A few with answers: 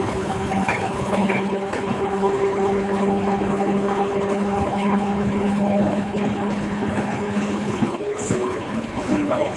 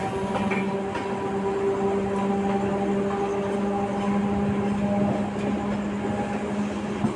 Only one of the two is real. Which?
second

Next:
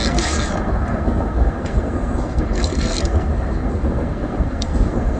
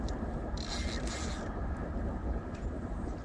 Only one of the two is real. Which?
second